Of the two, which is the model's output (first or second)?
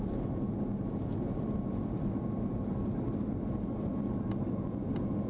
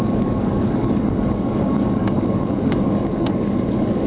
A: second